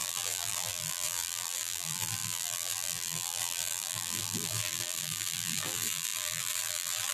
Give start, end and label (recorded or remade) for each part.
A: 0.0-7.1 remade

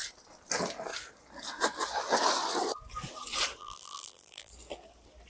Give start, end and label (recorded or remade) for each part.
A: 0.0-3.6 recorded; 3.6-4.5 remade; 4.5-5.3 recorded